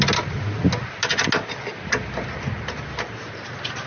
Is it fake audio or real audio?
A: real